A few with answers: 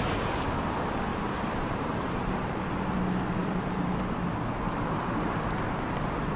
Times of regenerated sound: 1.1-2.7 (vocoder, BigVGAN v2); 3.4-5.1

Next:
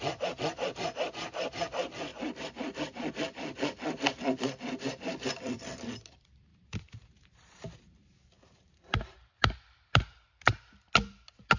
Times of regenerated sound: 6.5-10.9 (vocoder, BigVGAN v2)

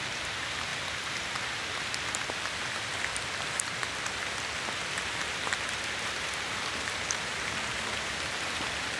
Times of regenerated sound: 0.0-0.7 (vocoder, BigVGAN v2); 5.1-9.0

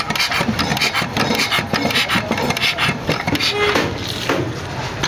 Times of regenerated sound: none